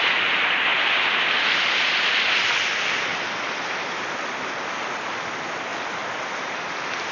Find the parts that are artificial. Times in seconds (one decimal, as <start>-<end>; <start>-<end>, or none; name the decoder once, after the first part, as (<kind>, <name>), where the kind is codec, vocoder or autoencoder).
none